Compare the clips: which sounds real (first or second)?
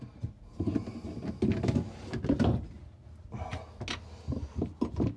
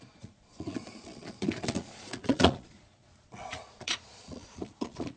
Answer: first